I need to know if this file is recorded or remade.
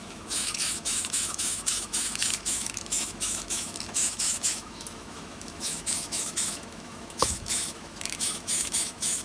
remade